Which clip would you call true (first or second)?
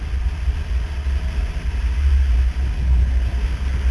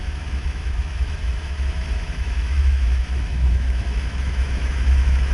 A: first